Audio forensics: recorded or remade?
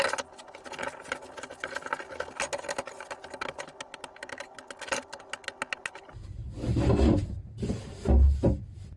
recorded